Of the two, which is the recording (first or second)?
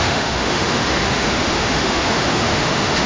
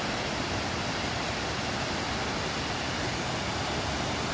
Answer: second